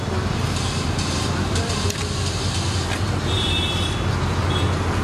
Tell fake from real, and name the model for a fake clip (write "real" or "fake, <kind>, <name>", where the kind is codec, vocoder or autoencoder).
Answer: real